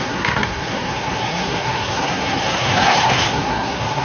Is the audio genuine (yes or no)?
no